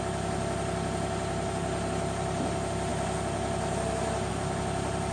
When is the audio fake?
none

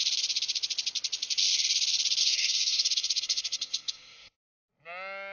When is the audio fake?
2.2-4.4

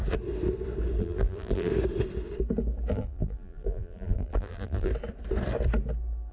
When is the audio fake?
1.0-1.7; 2.9-4.9